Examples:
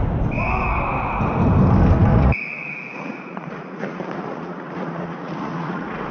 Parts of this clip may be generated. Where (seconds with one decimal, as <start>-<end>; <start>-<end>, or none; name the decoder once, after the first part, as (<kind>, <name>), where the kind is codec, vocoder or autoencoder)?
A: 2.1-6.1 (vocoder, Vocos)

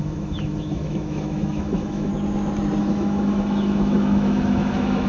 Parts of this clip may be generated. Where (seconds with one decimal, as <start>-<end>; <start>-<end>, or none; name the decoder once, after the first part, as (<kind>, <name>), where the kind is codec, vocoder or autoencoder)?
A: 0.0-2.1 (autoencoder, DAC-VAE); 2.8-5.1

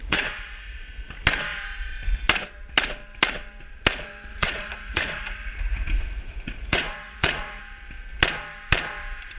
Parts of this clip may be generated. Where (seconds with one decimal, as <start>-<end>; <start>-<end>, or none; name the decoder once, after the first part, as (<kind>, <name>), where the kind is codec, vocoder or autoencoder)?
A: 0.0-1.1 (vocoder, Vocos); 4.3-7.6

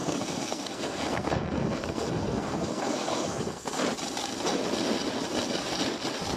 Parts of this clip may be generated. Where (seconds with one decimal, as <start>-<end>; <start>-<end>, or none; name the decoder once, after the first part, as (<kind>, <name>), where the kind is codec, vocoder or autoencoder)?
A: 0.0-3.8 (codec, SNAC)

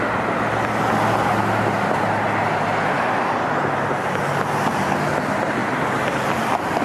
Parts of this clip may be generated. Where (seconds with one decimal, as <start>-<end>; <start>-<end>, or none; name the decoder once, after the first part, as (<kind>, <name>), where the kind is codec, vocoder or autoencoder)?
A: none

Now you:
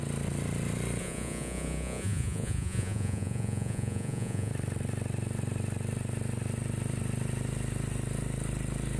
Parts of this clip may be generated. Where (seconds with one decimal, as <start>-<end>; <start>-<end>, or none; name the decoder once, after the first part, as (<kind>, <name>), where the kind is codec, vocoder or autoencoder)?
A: 1.0-4.5 (vocoder, Vocos)